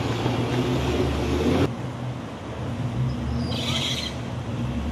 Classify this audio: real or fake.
real